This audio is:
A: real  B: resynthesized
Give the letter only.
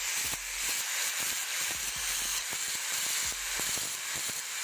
A